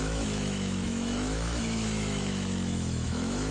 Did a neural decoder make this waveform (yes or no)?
yes